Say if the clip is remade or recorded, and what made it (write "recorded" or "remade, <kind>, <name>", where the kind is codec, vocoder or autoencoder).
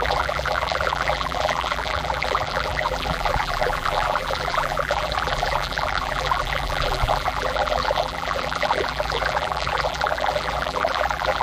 remade, vocoder, BigVGAN v2